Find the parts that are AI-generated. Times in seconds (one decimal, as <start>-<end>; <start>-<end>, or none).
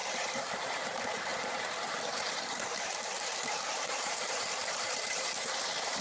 0.0-6.0